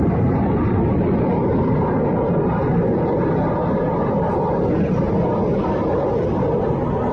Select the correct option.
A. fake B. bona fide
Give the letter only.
B